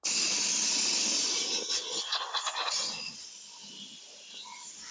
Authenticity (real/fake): real